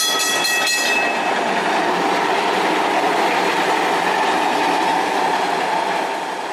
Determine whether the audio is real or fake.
real